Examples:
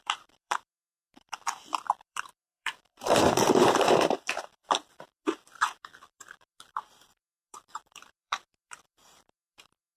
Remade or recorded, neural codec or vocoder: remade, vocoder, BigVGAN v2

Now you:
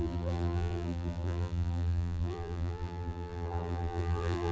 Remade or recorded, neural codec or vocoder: remade, vocoder, BigVGAN v2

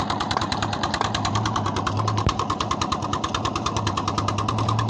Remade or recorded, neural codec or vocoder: remade, vocoder, BigVGAN v2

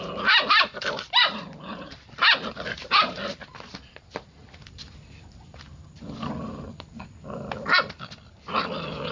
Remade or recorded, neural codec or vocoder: remade, vocoder, BigVGAN v2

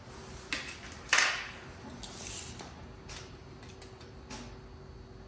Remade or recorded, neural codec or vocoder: recorded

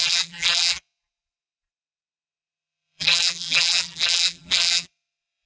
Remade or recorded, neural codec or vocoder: remade, vocoder, BigVGAN v2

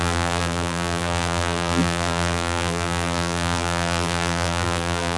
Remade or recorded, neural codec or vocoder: remade, vocoder, BigVGAN v2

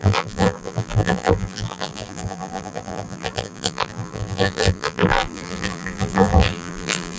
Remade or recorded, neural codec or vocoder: remade, vocoder, BigVGAN v2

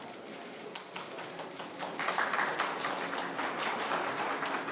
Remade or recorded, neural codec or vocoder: recorded